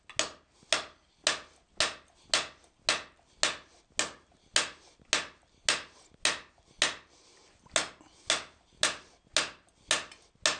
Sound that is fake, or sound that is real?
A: real